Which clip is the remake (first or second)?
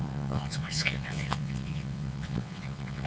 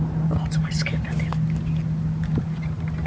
first